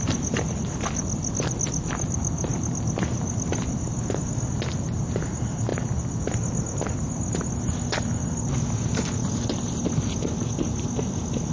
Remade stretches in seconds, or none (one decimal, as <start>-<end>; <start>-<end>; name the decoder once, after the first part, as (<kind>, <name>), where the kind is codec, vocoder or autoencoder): none